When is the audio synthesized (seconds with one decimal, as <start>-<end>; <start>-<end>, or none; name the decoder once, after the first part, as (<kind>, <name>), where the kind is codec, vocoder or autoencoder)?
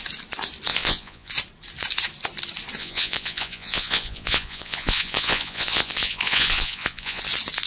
0.7-1.3 (vocoder, Vocos); 2.8-7.2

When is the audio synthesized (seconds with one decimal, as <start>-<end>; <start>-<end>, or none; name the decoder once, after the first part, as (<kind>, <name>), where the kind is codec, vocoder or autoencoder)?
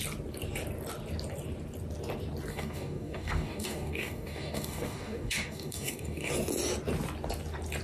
2.5-6.3 (codec, DAC)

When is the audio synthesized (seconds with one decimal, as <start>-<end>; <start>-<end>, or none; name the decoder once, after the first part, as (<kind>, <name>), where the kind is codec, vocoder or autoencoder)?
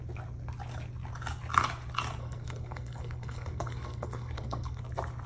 2.2-4.8 (codec, SNAC)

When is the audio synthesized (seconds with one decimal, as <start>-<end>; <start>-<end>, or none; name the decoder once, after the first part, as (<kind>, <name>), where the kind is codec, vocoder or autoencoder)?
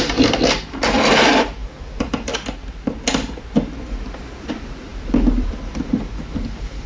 1.6-2.3 (vocoder, BigVGAN v2); 4.9-6.9